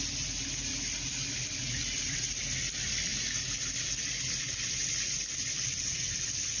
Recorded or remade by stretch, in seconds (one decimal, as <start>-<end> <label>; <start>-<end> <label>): 0.0-6.6 recorded